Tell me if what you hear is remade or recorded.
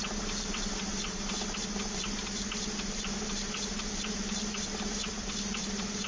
remade